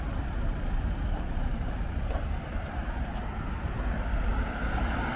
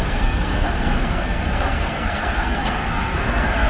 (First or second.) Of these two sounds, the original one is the first